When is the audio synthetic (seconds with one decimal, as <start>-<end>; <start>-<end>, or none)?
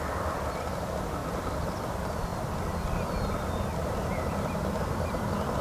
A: none